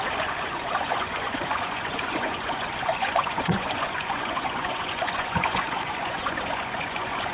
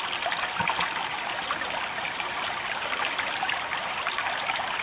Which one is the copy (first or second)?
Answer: first